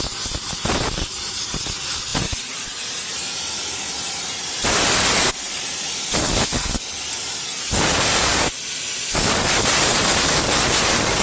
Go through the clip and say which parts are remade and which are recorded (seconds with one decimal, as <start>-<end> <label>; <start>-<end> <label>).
0.0-11.2 recorded